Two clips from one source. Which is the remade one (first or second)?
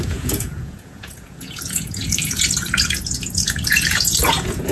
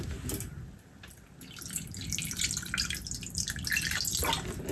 first